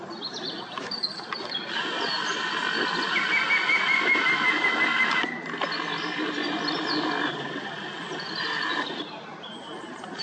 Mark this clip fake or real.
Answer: real